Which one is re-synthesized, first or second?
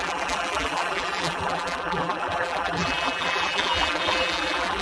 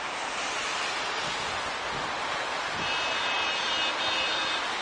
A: first